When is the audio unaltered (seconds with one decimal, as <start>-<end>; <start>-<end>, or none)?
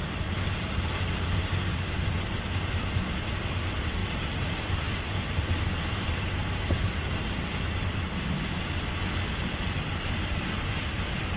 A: 0.0-4.0; 8.0-11.4